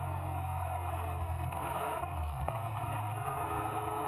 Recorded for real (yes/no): no